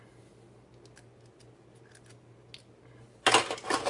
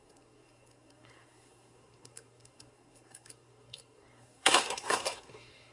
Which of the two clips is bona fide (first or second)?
first